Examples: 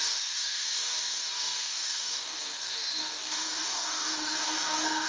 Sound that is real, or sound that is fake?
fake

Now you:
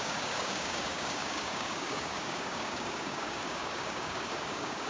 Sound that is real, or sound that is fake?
fake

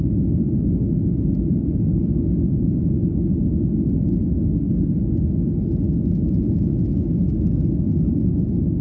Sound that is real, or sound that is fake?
real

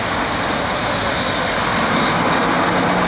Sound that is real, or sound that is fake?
real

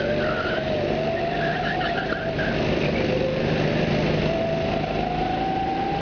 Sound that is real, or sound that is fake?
real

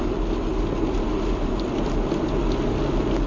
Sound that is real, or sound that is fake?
real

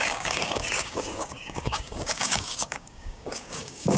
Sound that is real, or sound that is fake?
fake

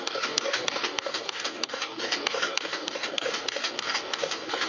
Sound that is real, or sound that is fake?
fake